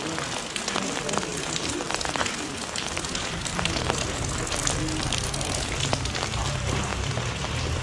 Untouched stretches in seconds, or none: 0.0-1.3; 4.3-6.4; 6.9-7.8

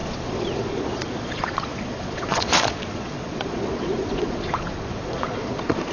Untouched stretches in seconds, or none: none

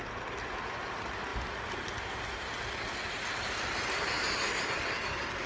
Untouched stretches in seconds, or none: 0.0-5.5

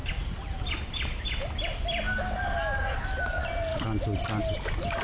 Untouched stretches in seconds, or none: 0.0-5.0